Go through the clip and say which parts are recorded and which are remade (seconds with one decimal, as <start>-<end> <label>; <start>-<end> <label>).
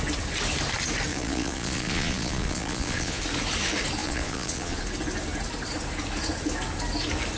0.0-1.1 recorded; 1.1-3.2 remade; 3.2-4.0 recorded; 4.0-4.8 remade; 4.8-7.4 recorded